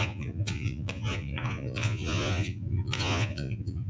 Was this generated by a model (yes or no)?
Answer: yes